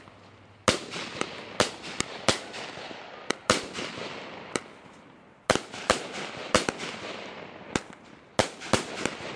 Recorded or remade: recorded